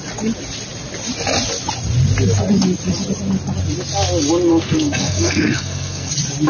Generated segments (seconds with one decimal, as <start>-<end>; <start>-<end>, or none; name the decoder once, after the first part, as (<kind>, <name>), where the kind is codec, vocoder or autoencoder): 4.5-6.1 (codec, SNAC)